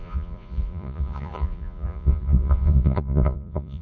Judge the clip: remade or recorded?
remade